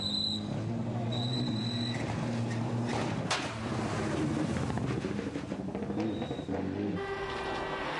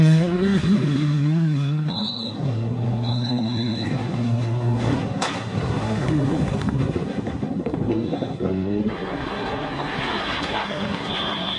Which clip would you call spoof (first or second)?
second